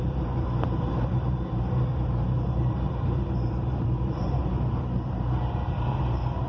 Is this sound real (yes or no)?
no